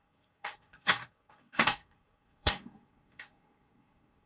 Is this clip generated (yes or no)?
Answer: yes